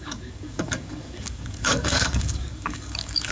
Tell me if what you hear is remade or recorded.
remade